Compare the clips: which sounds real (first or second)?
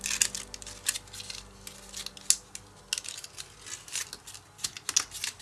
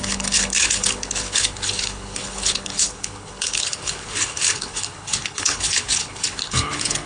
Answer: first